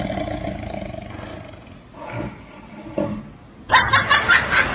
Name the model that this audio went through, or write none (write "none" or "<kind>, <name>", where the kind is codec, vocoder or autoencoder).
none